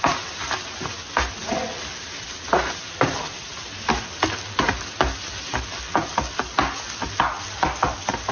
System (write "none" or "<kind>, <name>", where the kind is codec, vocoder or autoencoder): none